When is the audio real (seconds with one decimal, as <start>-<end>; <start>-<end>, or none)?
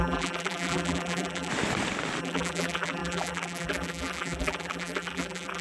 1.5-2.2